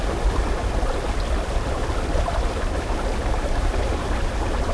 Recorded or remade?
remade